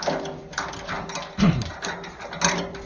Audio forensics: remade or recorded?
recorded